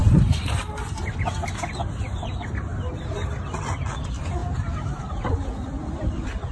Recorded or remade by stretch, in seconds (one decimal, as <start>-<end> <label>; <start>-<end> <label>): 0.0-2.7 remade; 2.7-3.9 recorded; 3.9-4.4 remade; 4.4-5.3 recorded; 5.3-6.5 remade